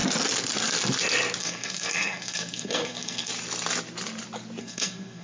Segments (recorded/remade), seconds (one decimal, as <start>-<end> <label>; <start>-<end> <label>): 0.0-1.4 recorded; 1.4-3.3 remade; 3.3-4.6 recorded; 4.6-5.2 remade